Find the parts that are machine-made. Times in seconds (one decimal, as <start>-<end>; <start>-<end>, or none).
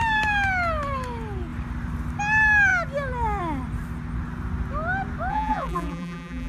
5.3-6.5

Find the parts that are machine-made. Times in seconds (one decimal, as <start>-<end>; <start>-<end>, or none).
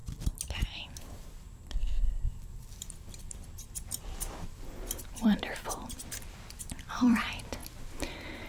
1.0-7.6